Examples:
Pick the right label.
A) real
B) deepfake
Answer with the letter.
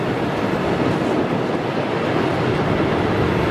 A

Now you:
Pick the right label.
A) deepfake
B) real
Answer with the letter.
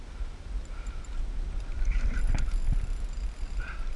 A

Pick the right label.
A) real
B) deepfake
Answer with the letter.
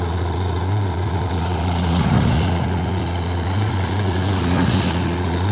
B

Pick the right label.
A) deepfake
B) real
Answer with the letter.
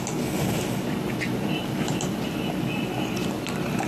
B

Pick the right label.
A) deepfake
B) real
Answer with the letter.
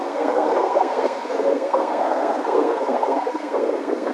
A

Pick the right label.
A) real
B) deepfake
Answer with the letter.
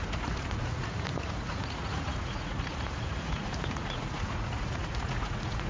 B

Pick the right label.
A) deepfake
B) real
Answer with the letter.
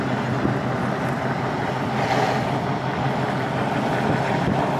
B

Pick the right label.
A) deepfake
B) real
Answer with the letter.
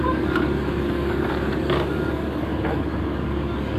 A